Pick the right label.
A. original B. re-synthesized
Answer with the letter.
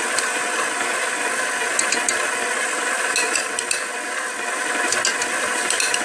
A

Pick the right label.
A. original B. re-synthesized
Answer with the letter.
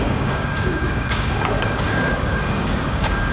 B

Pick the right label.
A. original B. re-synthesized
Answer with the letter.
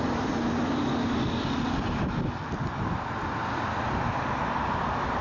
A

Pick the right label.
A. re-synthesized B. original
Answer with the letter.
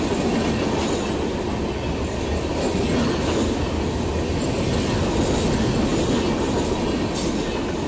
B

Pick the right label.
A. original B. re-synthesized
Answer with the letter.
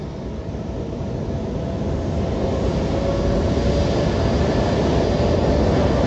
A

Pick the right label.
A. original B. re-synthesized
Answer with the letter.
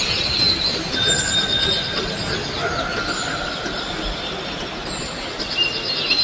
A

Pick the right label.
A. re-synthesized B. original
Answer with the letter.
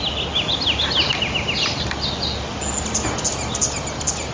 B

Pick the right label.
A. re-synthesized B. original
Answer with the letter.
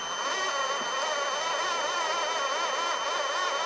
B